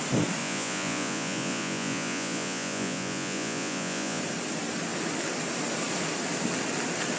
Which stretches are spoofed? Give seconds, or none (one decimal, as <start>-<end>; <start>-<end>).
0.4-4.2